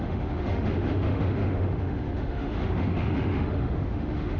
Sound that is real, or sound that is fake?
fake